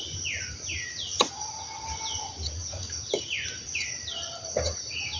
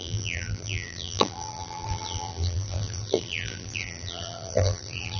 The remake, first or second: second